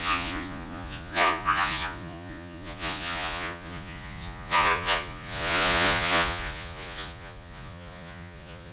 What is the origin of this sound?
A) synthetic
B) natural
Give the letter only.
A